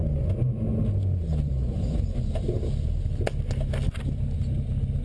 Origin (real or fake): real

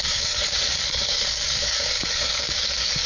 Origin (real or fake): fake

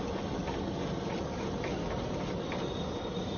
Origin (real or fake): real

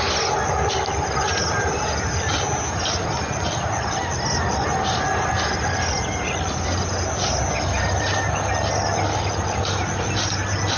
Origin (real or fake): real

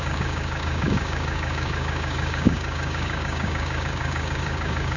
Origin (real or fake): fake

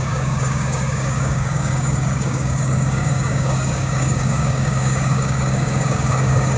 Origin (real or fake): fake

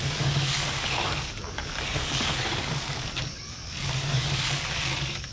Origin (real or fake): fake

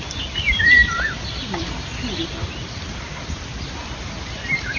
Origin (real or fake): real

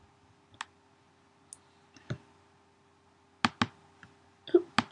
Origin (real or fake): real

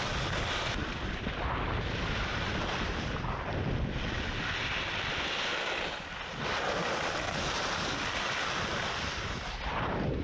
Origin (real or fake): real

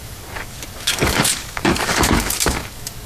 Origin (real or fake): fake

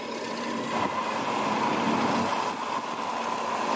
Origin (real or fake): real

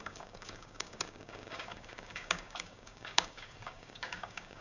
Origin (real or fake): fake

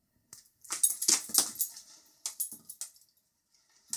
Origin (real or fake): real